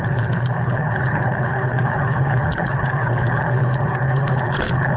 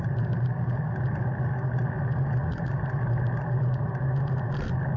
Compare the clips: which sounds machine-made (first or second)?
first